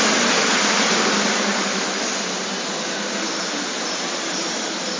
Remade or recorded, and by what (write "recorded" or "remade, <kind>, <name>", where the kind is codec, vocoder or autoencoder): recorded